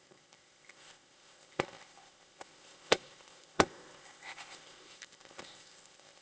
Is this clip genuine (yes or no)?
no